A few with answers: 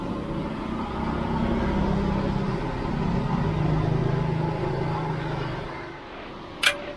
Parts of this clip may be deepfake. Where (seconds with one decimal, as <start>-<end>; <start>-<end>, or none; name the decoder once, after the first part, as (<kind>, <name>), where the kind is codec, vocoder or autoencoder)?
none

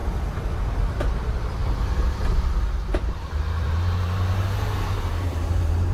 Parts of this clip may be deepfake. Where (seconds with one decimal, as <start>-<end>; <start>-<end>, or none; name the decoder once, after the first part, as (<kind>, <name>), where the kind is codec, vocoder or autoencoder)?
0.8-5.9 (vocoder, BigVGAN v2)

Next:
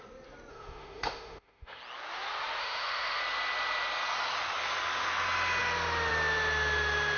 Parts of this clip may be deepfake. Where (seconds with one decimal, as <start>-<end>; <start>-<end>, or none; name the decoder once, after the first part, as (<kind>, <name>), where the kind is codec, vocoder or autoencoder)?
0.5-1.8 (autoencoder, DAC-VAE); 2.6-3.2

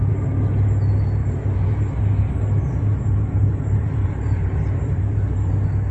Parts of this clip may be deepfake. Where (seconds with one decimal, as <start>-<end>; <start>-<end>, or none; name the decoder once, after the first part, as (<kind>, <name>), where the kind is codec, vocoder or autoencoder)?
1.2-2.0 (vocoder, BigVGAN v2); 2.8-5.5

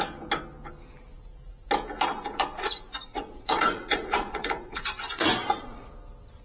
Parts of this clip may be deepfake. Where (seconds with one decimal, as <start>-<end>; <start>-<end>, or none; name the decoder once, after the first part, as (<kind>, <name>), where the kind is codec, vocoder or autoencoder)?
2.1-5.9 (vocoder, Vocos)

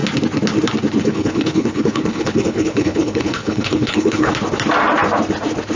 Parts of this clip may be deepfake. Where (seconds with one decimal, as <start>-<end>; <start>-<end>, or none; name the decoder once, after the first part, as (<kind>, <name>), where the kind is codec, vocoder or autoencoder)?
1.0-4.3 (codec, HILCodec)